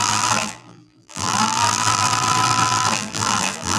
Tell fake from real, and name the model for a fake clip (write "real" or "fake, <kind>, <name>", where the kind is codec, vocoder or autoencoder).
fake, vocoder, BigVGAN v2